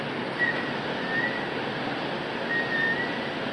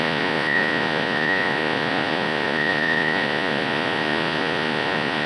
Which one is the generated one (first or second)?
second